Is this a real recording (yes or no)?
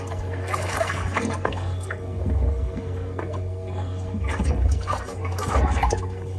no